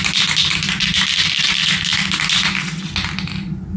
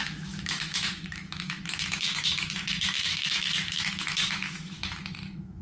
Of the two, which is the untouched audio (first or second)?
first